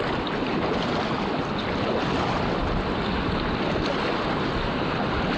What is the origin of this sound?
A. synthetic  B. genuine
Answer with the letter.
B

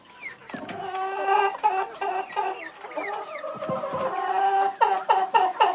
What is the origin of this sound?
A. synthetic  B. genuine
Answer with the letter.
B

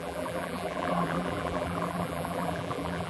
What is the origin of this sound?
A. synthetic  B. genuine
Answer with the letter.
A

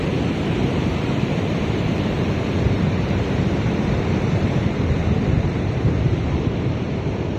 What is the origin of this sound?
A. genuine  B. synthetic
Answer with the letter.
B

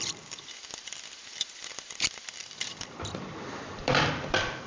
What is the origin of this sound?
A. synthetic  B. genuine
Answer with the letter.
A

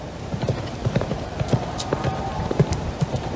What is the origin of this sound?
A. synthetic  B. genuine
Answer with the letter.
A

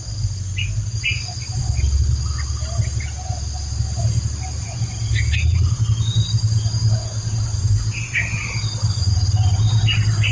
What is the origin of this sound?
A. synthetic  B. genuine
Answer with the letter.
B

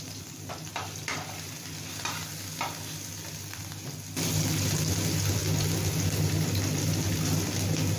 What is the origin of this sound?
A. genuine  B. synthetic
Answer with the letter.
A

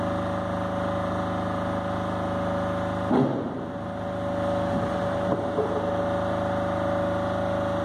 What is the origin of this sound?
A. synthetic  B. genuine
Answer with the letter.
B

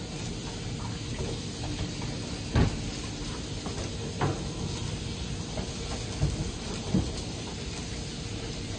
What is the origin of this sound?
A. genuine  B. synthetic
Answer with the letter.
A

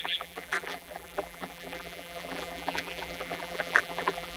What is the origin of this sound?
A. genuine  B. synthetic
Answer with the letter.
B